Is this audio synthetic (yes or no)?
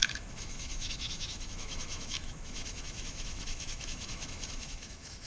yes